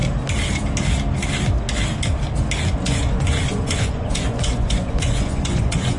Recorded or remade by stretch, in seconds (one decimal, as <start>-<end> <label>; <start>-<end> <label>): 0.0-2.8 recorded; 2.8-6.0 remade

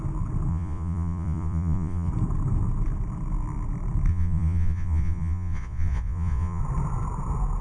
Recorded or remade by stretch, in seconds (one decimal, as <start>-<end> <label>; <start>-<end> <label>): 0.0-0.5 recorded; 0.5-2.1 remade; 2.1-4.1 recorded; 4.1-6.6 remade; 6.6-7.6 recorded

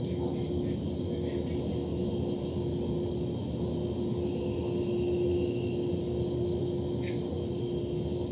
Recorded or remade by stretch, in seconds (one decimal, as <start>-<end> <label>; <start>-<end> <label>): 0.0-8.3 recorded

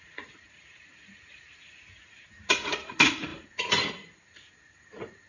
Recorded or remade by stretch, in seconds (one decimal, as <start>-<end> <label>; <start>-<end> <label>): 0.0-5.3 remade

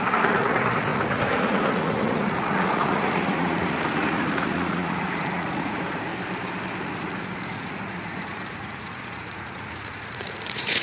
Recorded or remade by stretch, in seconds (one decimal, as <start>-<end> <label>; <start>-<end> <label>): 0.0-6.1 remade; 6.1-6.8 recorded; 6.8-10.8 remade